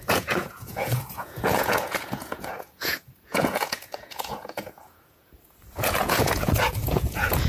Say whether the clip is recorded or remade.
remade